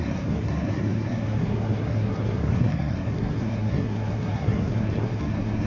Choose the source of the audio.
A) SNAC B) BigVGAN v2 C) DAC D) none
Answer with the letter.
A